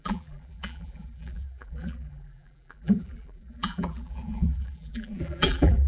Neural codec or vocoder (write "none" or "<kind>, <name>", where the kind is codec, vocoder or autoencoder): vocoder, BigVGAN v2